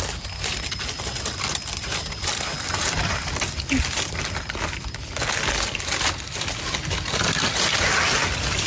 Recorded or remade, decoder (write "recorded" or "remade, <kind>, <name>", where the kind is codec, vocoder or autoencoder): recorded